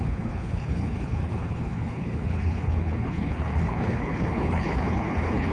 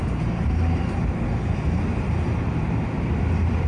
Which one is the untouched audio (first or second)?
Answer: second